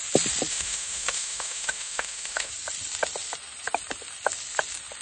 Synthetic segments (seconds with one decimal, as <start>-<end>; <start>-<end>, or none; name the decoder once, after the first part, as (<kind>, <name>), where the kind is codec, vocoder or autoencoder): 0.5-2.5 (autoencoder, DAC-VAE)

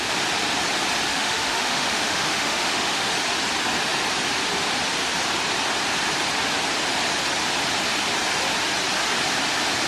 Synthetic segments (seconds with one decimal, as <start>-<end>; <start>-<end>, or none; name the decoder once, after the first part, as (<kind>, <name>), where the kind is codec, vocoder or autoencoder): 1.1-3.1 (autoencoder, DAC-VAE)

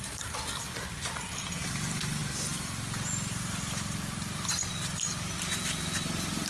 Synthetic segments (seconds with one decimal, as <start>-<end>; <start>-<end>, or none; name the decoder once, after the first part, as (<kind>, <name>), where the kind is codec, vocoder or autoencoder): none